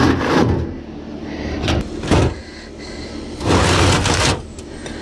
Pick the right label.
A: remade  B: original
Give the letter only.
B